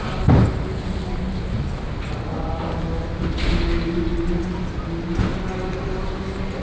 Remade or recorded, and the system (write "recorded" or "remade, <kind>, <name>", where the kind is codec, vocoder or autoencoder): recorded